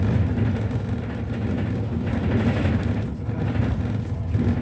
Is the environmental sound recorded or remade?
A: recorded